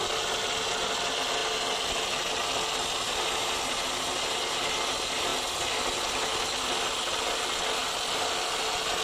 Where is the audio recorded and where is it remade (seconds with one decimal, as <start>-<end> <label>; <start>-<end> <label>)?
0.0-9.0 recorded

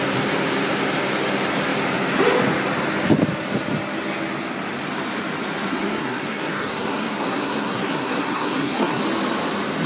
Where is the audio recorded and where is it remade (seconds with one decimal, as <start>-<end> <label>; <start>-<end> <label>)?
0.0-5.7 recorded; 5.7-9.0 remade; 9.0-9.9 recorded

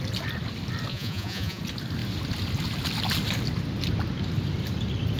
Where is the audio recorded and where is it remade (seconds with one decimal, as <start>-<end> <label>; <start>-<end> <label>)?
0.0-0.9 recorded; 0.9-1.6 remade; 1.6-5.2 recorded

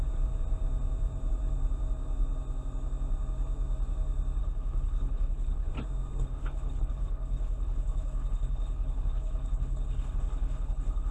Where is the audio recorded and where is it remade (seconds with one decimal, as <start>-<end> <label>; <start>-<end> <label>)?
0.0-4.4 recorded; 4.4-5.7 remade; 5.7-6.2 recorded; 6.2-11.1 remade